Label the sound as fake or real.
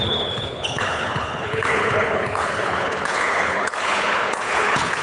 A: fake